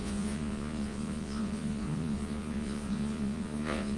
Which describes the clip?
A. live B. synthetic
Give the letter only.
B